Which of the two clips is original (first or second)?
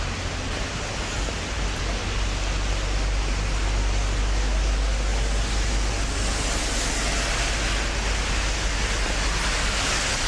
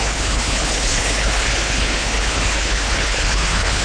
first